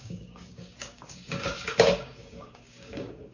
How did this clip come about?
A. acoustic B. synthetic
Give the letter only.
B